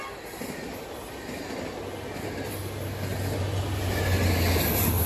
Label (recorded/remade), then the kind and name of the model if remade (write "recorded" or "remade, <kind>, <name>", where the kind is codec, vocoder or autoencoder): recorded